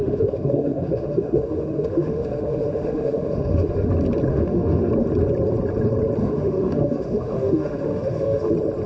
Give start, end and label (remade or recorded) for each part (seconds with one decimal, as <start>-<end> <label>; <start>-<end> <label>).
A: 0.0-3.9 remade; 3.9-4.3 recorded; 4.3-4.9 remade; 4.9-6.2 recorded; 6.2-8.5 remade; 8.5-8.9 recorded